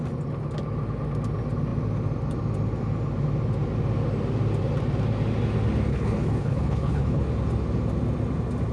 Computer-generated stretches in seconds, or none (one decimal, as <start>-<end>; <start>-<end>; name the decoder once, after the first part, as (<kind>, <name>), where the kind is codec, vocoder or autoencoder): 5.9-7.2 (codec, HILCodec)